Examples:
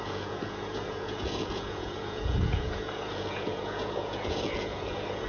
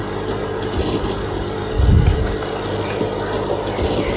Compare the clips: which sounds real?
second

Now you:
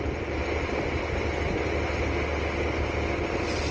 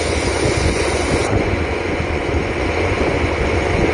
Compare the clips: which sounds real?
first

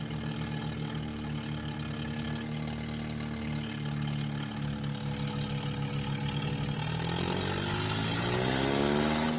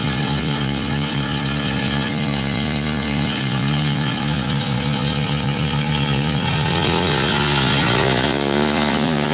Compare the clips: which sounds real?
first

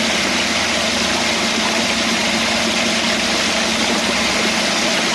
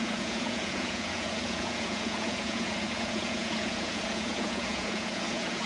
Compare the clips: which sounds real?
first